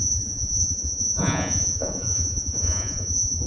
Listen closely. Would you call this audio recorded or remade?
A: remade